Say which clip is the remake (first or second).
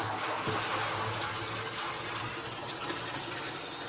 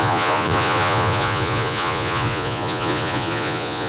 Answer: second